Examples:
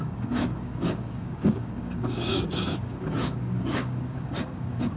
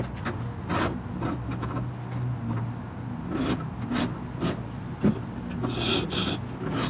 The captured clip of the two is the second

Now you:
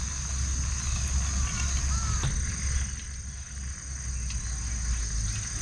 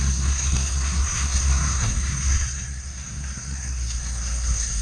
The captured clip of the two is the first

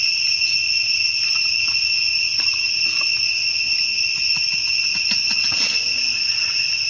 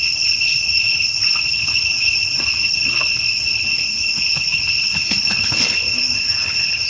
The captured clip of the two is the first